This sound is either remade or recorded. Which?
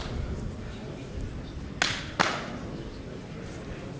recorded